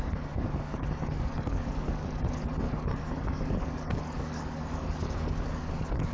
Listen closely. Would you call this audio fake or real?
fake